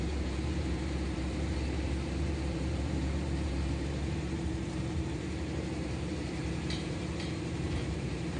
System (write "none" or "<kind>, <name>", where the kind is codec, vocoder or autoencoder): vocoder, BigVGAN v2